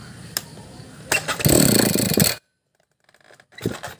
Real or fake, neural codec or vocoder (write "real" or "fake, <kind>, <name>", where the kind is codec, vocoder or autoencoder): real